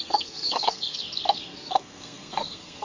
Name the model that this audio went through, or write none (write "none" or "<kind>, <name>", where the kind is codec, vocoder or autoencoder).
codec, SNAC